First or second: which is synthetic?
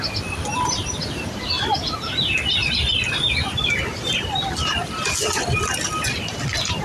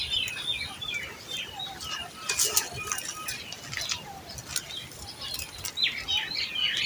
first